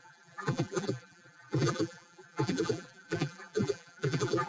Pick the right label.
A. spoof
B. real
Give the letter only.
A